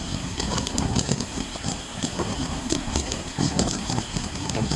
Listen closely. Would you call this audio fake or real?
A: fake